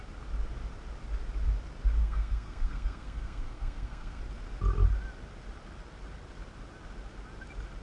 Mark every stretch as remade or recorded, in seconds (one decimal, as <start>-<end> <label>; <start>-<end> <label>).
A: 0.0-2.0 recorded; 2.0-4.2 remade; 4.2-7.8 recorded